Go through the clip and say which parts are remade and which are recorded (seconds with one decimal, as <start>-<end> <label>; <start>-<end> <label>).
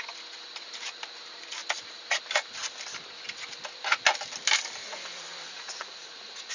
0.0-4.8 recorded; 4.8-6.5 remade